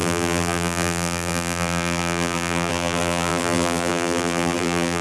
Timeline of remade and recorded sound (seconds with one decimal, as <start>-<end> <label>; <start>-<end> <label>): 0.0-5.0 remade